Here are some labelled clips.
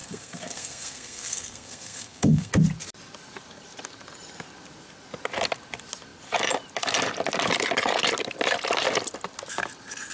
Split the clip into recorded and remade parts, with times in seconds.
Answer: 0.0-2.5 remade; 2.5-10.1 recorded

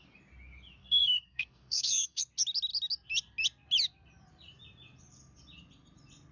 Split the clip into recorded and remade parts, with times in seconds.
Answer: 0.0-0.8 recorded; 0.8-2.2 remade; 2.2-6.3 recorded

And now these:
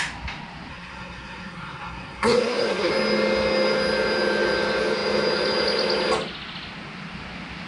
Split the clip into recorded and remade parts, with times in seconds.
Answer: 0.0-0.7 recorded; 0.7-2.9 remade; 2.9-7.7 recorded

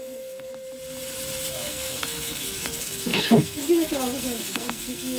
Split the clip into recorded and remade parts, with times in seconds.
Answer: 0.0-0.5 remade; 0.5-1.5 recorded; 1.5-5.2 remade

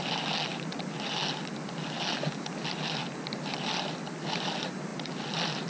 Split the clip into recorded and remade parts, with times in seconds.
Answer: 0.0-5.7 recorded